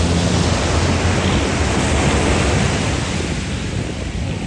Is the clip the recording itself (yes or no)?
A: yes